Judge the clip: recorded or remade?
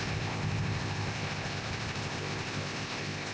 remade